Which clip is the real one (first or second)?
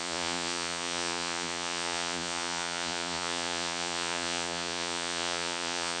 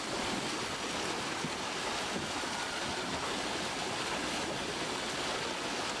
second